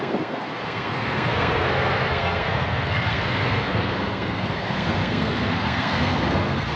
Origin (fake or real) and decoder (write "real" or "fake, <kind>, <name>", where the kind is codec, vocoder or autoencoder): fake, codec, SNAC